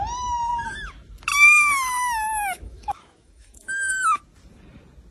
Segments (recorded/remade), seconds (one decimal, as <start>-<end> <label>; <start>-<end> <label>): 0.0-1.3 recorded; 1.3-4.2 remade; 4.2-5.1 recorded